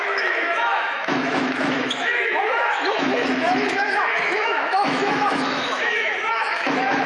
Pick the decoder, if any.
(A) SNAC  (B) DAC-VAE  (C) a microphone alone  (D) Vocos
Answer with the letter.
B